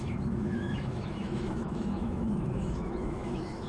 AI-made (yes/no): yes